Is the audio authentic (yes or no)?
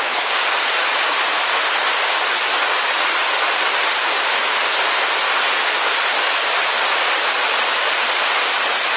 yes